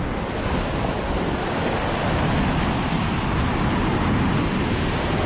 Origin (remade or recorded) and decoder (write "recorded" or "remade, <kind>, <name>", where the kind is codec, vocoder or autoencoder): recorded